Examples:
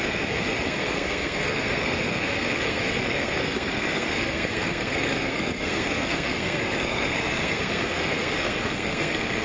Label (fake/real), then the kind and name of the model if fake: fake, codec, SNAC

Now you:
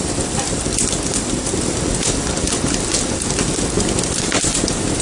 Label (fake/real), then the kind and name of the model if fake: real